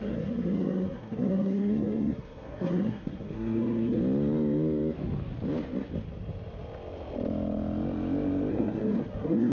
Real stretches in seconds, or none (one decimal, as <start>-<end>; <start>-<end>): 4.0-8.5